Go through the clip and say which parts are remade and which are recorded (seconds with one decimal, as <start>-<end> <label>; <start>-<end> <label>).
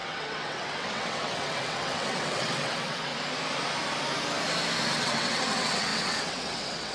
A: 0.0-3.1 remade; 3.1-4.9 recorded; 4.9-6.9 remade